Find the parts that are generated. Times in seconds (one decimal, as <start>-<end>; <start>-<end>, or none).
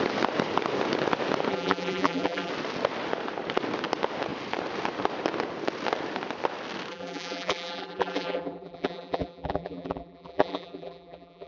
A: 1.5-2.5; 6.9-11.5